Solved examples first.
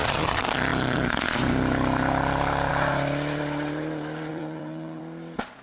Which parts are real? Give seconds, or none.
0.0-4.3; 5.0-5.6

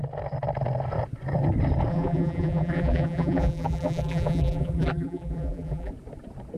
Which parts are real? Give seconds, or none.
0.0-1.9; 5.9-6.6

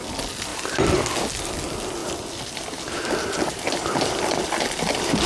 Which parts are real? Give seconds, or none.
0.0-0.5; 1.0-2.0

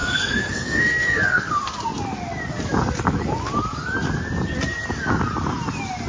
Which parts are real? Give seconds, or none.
1.5-6.1

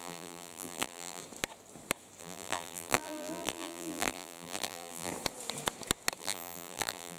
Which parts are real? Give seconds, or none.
1.2-2.2; 5.1-6.2

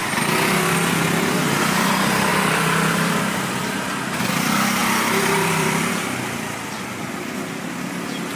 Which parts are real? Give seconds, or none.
0.0-2.3; 3.6-4.8; 5.9-8.4

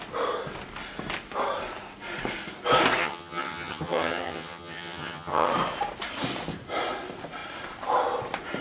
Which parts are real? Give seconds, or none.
0.0-3.0; 5.5-8.6